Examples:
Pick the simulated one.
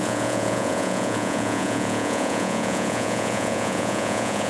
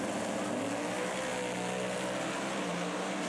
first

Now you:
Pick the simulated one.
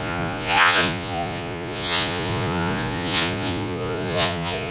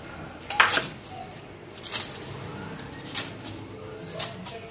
first